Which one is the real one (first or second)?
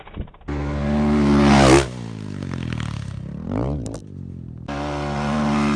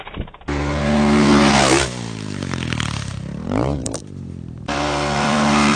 first